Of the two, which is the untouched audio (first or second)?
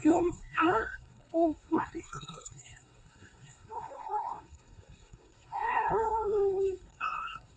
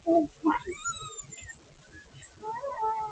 second